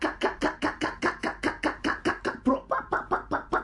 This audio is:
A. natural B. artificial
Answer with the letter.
B